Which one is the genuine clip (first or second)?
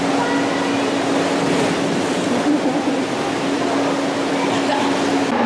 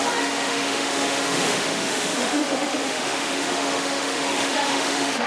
first